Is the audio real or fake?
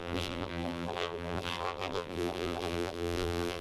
fake